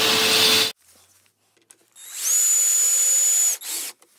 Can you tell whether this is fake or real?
real